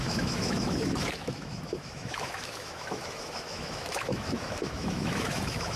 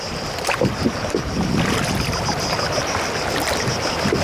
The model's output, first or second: first